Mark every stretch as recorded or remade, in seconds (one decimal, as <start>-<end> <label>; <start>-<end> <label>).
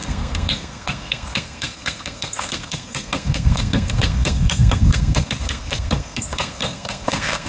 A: 0.0-7.5 remade